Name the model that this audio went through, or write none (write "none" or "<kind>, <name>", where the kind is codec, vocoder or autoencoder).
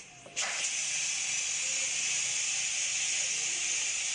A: none